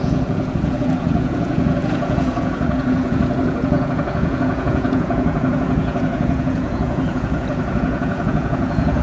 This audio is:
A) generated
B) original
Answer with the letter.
A